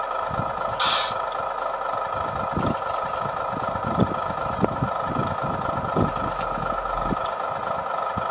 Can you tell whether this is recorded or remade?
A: recorded